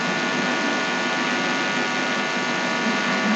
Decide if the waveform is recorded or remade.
recorded